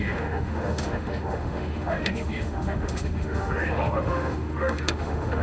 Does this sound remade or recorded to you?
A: remade